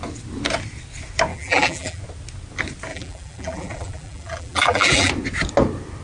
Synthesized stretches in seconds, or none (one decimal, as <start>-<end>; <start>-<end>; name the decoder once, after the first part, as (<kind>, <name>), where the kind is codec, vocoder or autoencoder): 1.3-2.0 (vocoder, BigVGAN v2); 2.9-5.1